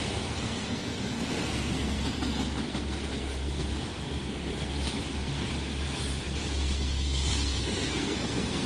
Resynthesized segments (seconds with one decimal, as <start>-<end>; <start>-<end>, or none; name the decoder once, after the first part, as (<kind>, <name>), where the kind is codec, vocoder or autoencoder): 0.0-5.5 (codec, SNAC); 6.2-8.7